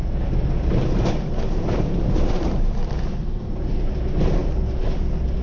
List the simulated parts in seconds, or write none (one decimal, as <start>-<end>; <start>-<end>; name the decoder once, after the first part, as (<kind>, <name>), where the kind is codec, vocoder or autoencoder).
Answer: none